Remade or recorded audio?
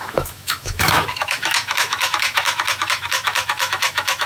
remade